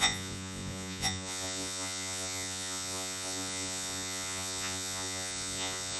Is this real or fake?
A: fake